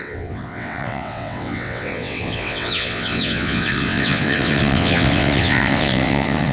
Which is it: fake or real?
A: fake